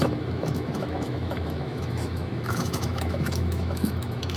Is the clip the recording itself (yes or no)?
no